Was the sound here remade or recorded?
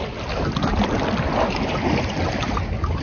recorded